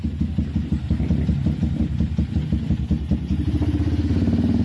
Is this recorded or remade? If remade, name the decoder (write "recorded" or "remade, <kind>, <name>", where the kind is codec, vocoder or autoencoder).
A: recorded